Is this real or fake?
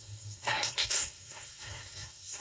fake